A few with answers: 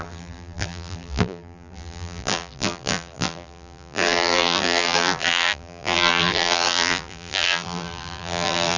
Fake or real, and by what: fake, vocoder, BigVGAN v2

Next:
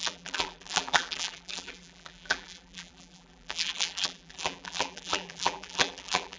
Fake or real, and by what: fake, vocoder, BigVGAN v2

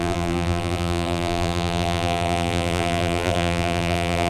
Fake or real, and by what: fake, vocoder, BigVGAN v2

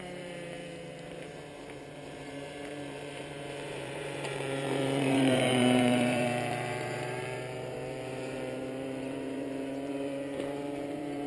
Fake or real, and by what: fake, vocoder, BigVGAN v2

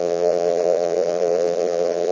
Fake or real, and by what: fake, vocoder, BigVGAN v2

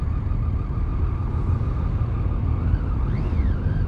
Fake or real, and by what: real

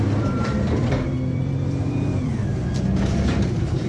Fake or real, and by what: fake, vocoder, BigVGAN v2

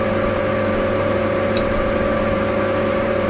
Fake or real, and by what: fake, vocoder, BigVGAN v2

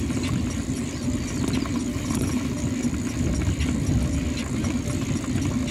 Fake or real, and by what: real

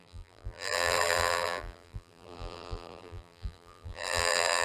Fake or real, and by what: fake, vocoder, BigVGAN v2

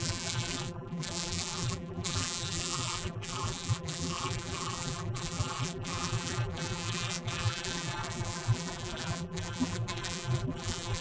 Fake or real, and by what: fake, vocoder, BigVGAN v2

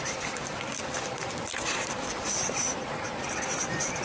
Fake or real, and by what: fake, vocoder, BigVGAN v2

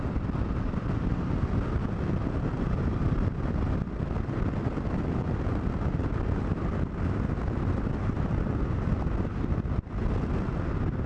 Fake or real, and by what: real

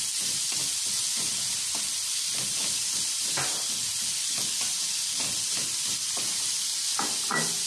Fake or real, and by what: real